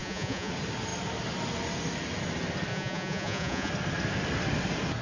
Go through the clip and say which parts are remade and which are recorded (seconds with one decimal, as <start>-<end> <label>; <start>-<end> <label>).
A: 0.0-0.5 remade; 0.5-2.7 recorded; 2.7-3.7 remade; 3.7-5.0 recorded